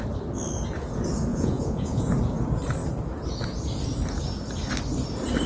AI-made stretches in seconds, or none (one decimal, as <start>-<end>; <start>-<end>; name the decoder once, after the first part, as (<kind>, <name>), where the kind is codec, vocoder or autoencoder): 1.3-2.0 (vocoder, Vocos)